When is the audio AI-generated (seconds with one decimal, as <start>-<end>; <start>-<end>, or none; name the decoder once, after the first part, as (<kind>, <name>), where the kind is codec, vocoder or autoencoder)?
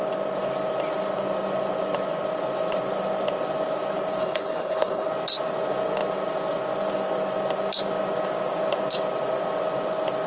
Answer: 4.2-5.1 (codec, HILCodec)